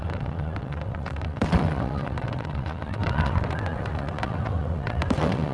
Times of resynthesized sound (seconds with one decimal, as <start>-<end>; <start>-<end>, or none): 0.0-5.5